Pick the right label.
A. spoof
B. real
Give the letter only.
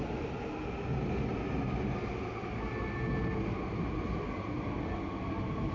B